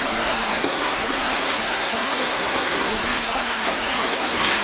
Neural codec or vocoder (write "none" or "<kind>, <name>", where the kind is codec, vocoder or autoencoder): codec, SNAC